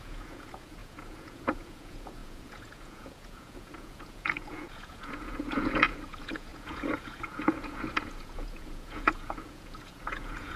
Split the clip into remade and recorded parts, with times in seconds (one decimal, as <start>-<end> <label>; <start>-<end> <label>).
0.0-10.6 remade